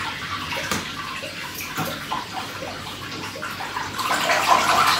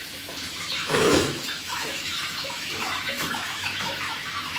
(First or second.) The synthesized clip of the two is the second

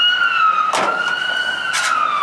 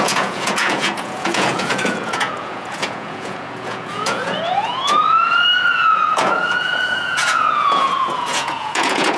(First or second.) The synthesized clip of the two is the second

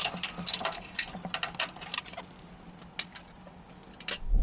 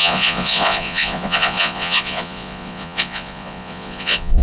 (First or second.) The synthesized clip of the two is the second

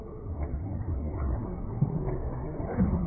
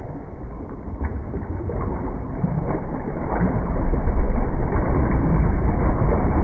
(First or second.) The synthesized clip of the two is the first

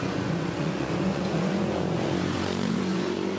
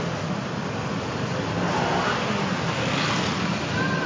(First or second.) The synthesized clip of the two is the first